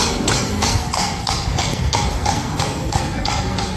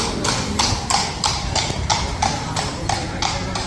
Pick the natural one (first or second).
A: second